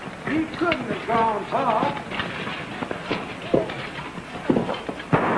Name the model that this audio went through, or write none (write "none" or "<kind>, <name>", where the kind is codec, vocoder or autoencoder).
none